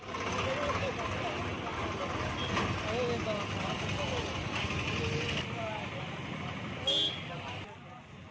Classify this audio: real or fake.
real